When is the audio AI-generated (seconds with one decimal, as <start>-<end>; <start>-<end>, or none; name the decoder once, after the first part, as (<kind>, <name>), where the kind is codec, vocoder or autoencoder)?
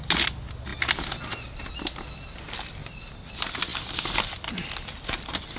2.8-3.3 (vocoder, BigVGAN v2)